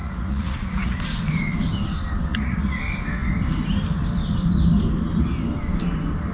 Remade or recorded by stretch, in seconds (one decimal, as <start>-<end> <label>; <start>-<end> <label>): 0.0-1.0 remade; 1.0-2.3 recorded; 2.3-2.8 remade; 2.8-6.3 recorded